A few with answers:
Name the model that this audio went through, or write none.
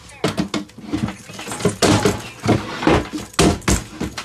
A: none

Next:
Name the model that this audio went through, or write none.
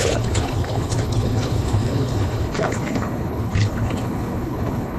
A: codec, HILCodec